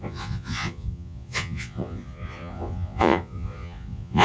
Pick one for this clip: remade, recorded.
remade